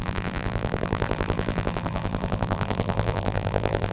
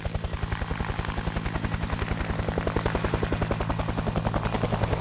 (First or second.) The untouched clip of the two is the second